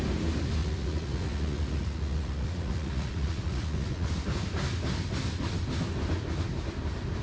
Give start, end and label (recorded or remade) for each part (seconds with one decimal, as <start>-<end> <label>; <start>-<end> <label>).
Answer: 0.0-0.6 recorded; 0.6-4.1 remade; 4.1-7.2 recorded

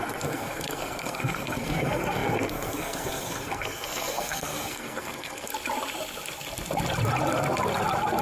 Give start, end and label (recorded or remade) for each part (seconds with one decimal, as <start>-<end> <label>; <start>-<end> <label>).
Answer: 0.0-5.5 remade; 5.5-8.2 recorded

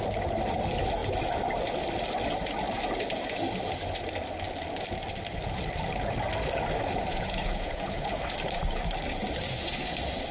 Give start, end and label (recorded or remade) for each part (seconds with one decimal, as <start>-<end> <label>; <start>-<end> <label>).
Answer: 0.0-7.1 recorded; 7.1-8.1 remade; 8.1-10.3 recorded

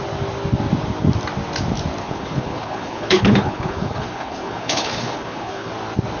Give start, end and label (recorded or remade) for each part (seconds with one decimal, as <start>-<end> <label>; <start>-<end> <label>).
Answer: 0.0-2.0 recorded; 2.0-5.7 remade; 5.7-6.2 recorded